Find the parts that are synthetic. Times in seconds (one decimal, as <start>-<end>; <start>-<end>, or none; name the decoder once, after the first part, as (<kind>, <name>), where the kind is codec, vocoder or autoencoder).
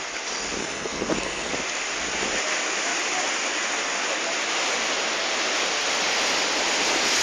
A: 0.6-1.5 (codec, SNAC)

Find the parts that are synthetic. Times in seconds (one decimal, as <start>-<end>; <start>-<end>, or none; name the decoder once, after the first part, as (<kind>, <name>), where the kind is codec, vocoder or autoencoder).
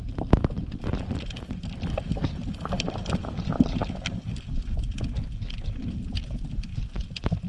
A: none